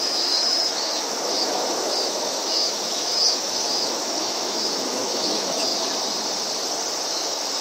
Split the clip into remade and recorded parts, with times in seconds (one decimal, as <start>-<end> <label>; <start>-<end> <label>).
0.0-5.7 remade; 5.7-7.1 recorded; 7.1-7.6 remade